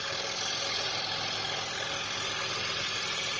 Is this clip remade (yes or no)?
no